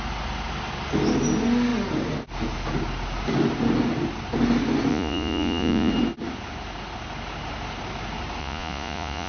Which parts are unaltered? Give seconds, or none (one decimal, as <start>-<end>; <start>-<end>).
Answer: 0.0-4.9; 5.9-8.4